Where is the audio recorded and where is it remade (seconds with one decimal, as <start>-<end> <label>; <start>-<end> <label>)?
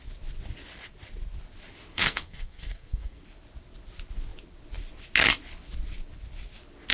0.0-1.9 recorded; 1.9-3.2 remade; 3.2-6.9 recorded